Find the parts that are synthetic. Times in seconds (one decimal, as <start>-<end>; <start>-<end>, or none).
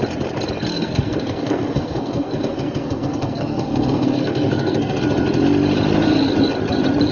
0.7-5.0